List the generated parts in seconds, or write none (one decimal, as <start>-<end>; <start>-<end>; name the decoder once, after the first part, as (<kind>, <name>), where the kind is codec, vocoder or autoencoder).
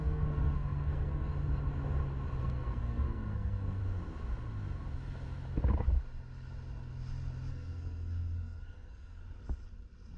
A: 0.0-1.3 (codec, SNAC); 2.4-3.8; 7.5-9.2